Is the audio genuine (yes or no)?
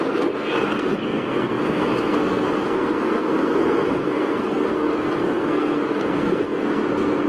no